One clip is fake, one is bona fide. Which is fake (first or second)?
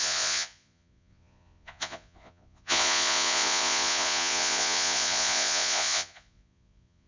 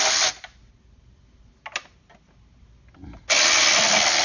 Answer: first